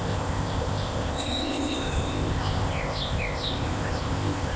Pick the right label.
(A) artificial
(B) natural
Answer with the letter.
A